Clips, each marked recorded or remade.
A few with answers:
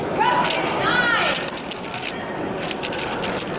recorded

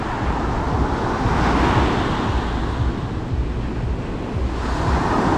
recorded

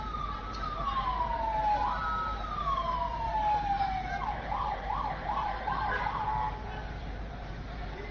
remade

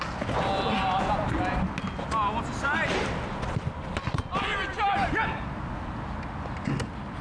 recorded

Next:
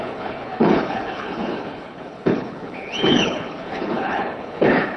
remade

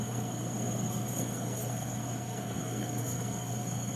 remade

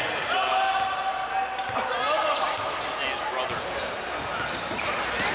recorded